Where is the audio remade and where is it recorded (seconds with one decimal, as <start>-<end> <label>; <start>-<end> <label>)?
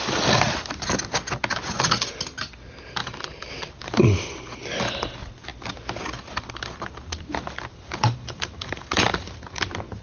0.0-3.0 recorded; 3.0-3.5 remade; 3.5-7.7 recorded; 7.7-9.3 remade; 9.3-10.0 recorded